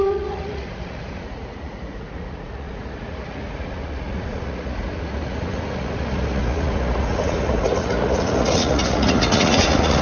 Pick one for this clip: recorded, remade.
remade